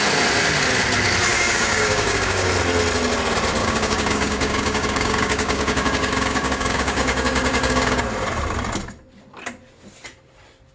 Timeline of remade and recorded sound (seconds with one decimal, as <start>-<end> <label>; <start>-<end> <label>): 0.0-1.3 recorded; 1.3-2.5 remade; 2.5-3.6 recorded; 3.6-8.0 remade; 8.0-10.7 recorded